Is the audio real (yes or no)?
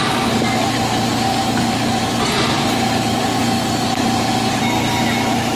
yes